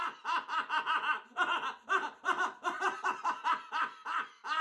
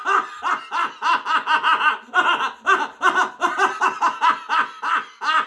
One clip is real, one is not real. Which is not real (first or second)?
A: first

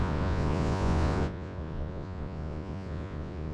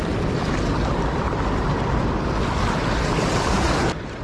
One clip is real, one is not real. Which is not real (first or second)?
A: first